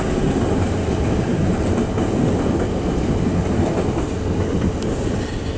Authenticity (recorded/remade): recorded